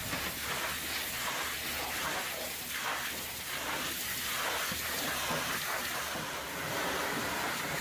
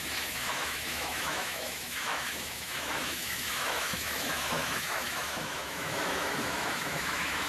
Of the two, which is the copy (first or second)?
second